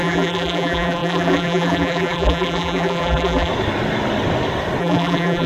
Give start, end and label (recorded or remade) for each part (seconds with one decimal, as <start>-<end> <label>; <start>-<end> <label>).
0.0-3.5 remade; 3.5-4.8 recorded; 4.8-5.5 remade